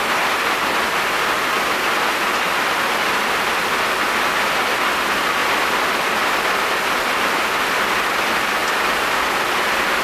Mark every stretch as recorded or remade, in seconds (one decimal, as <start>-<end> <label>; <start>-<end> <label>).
0.0-10.0 recorded